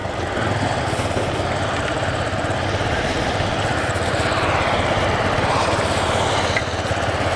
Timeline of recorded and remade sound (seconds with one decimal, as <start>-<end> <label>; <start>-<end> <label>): 0.0-7.4 recorded